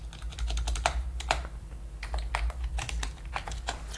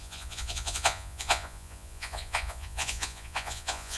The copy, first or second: second